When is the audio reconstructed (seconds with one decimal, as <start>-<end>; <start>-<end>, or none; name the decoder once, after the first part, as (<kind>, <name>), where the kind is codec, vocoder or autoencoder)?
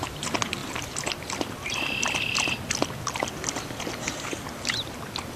none